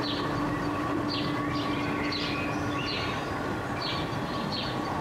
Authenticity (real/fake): real